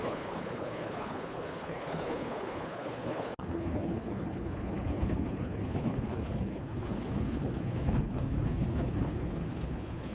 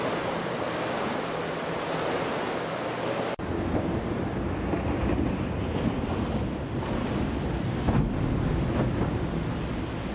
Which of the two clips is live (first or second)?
second